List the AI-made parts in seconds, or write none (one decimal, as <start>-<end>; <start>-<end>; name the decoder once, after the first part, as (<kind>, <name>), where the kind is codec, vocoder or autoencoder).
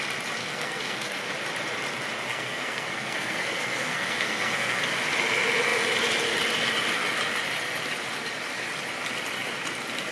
0.4-1.3 (codec, SNAC); 2.3-4.8